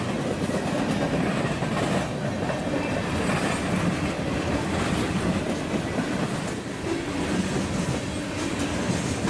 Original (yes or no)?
yes